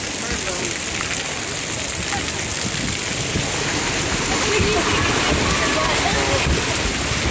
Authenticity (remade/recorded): recorded